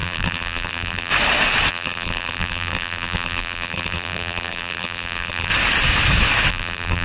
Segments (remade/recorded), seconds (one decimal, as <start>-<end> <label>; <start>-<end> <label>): 0.0-1.1 remade; 1.1-1.7 recorded; 1.7-5.5 remade; 5.5-6.5 recorded; 6.5-7.0 remade